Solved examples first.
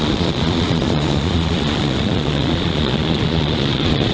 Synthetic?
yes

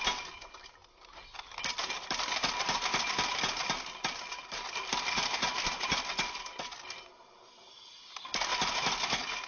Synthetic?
no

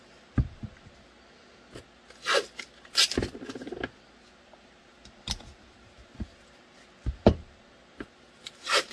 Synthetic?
no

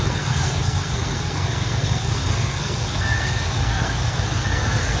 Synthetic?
yes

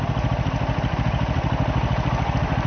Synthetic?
no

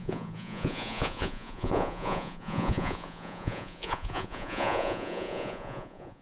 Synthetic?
yes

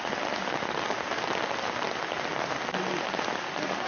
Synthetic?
no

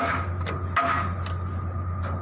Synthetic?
no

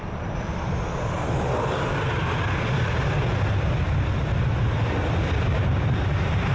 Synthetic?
no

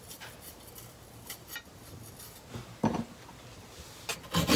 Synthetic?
no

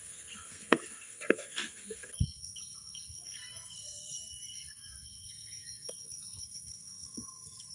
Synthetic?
yes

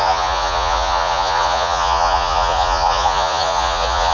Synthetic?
yes